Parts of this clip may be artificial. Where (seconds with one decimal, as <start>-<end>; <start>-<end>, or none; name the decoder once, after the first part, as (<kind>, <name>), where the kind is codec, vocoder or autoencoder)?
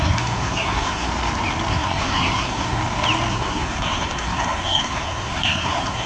0.0-1.1 (codec, SNAC); 1.7-2.8; 3.3-6.1